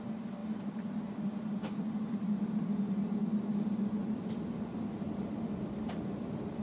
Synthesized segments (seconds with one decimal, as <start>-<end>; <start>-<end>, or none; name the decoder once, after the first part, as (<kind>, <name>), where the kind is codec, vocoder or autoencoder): 0.4-2.6 (vocoder, BigVGAN v2); 4.0-6.6